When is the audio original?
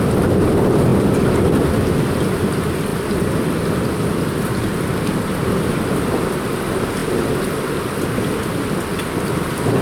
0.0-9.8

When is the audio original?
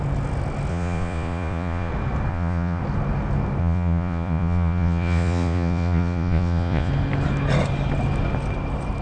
0.0-0.7; 1.9-2.3; 2.8-3.6; 6.9-9.0